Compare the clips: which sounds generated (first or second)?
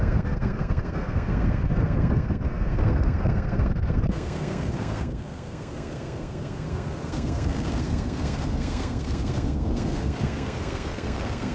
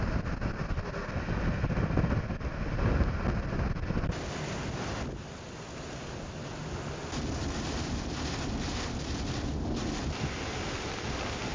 first